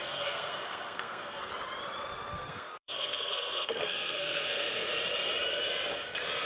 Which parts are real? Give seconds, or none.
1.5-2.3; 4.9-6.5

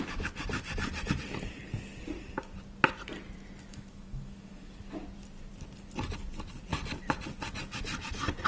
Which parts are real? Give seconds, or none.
0.0-3.7; 4.7-8.5

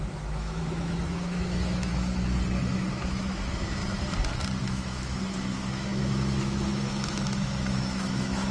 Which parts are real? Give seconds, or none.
1.9-2.6; 3.8-4.6

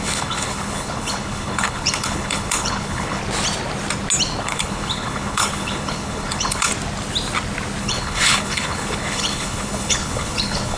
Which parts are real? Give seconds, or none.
3.2-4.4; 6.7-7.8

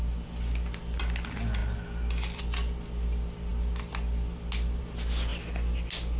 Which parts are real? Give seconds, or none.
0.0-6.2

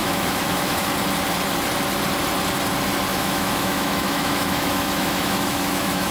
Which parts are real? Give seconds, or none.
0.9-3.1

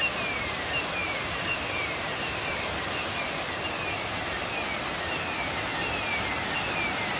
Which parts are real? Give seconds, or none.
0.0-1.0; 3.3-7.2